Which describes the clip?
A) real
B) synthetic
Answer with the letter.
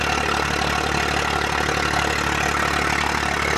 A